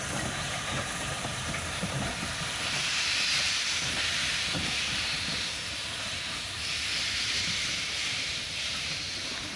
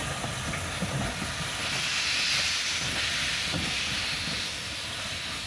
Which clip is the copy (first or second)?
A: first